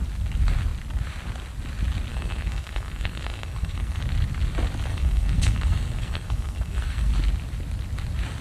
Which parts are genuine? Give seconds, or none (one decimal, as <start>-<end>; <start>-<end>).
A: 0.0-2.1; 4.0-4.9; 7.1-8.4